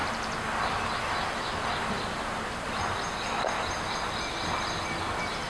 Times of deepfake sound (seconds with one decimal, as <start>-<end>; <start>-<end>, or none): none